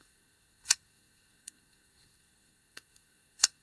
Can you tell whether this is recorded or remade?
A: remade